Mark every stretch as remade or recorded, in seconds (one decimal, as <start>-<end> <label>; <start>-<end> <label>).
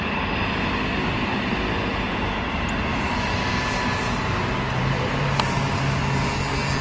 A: 0.0-2.9 recorded; 2.9-6.0 remade; 6.0-6.8 recorded